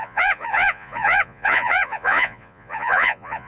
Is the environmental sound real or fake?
fake